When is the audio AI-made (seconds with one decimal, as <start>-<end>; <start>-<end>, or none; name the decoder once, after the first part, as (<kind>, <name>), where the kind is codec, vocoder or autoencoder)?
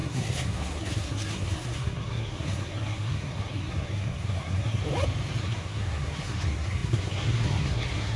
0.0-4.8 (codec, SNAC); 5.4-8.2